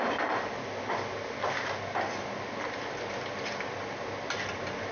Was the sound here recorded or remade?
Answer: recorded